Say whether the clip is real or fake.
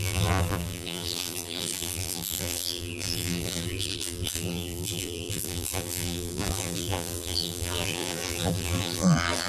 fake